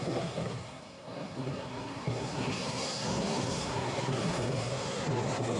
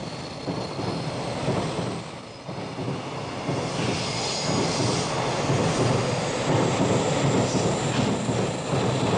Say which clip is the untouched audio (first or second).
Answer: second